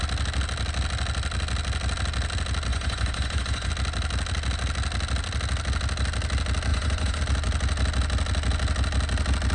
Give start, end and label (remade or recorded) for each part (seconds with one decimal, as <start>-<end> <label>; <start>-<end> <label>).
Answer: 0.0-2.7 recorded; 2.7-3.7 remade; 3.7-6.7 recorded; 6.7-7.2 remade; 7.2-9.5 recorded